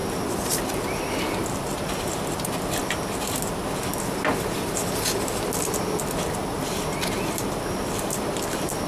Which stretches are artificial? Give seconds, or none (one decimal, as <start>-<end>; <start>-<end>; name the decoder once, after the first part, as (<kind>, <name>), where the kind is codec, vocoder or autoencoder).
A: none